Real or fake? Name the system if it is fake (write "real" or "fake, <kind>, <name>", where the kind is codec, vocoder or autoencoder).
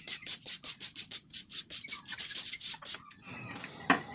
real